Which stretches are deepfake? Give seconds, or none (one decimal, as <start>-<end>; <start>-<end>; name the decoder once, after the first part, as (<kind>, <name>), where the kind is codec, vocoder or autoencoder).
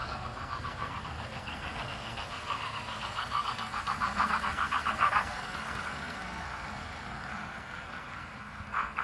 0.0-9.0 (codec, SNAC)